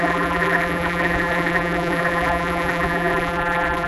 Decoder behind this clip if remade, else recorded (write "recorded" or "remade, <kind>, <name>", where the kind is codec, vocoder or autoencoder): remade, vocoder, BigVGAN v2